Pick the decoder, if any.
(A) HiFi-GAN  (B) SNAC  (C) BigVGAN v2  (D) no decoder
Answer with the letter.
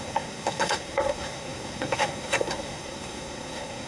B